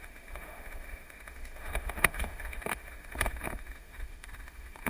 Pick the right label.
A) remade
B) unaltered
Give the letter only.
A